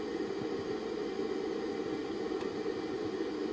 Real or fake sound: real